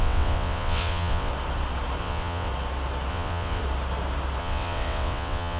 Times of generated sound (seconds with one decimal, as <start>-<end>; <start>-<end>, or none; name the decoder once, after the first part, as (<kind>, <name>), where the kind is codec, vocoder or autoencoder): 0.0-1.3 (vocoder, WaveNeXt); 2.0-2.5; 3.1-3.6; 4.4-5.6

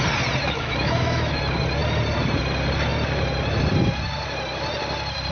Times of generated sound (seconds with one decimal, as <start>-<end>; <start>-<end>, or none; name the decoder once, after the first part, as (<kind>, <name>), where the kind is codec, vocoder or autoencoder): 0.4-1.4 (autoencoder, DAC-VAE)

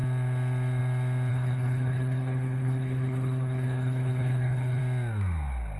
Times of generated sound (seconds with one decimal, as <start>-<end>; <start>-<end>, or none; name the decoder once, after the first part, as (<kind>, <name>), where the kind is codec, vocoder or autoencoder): 1.3-4.8 (codec, HILCodec)